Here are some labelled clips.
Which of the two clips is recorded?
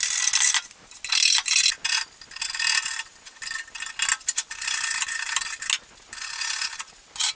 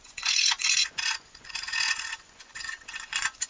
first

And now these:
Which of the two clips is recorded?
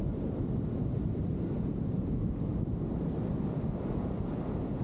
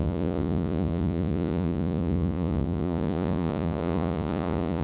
first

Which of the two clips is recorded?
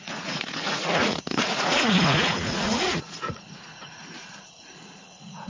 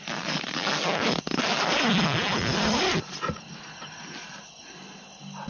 second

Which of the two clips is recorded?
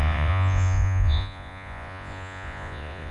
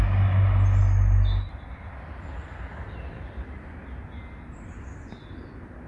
second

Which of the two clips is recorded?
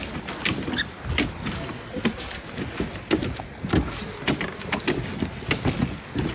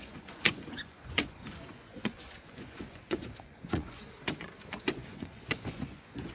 first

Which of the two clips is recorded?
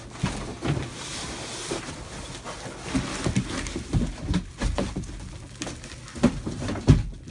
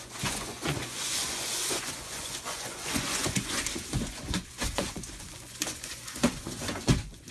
first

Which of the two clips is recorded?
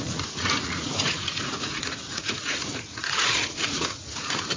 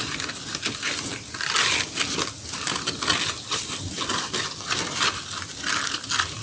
second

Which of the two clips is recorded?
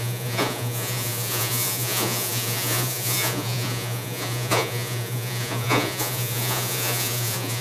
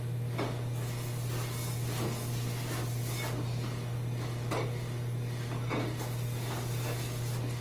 second